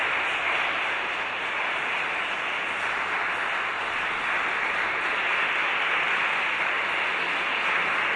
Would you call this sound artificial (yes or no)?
no